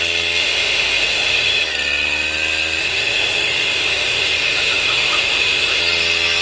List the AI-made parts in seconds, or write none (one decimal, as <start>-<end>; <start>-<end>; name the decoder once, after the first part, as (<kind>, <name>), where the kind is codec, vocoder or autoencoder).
0.4-1.6 (autoencoder, DAC-VAE); 2.8-5.8